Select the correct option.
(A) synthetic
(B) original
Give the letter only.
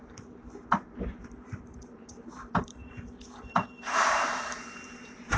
A